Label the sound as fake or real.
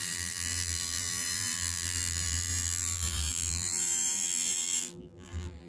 fake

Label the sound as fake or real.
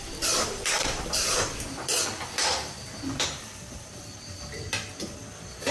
fake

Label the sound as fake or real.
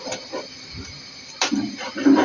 fake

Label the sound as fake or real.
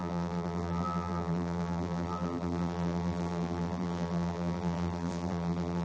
fake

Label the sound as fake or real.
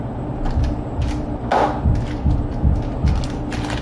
real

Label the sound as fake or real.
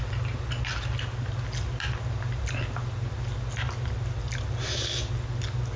real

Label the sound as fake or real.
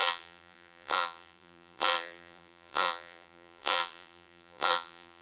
fake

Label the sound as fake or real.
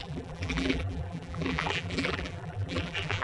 fake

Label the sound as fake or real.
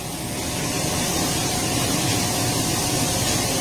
fake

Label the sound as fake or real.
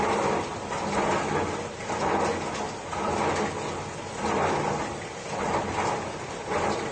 real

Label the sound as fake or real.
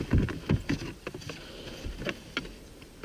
real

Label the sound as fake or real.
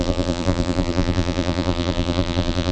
fake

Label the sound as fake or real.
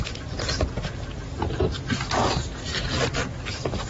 real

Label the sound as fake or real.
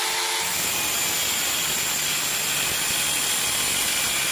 real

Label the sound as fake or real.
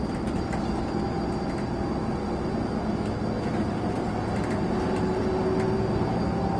real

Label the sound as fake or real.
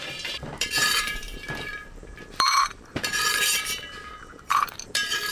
fake